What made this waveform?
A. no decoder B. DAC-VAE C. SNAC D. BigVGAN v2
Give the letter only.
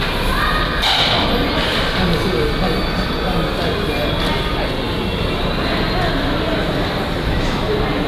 A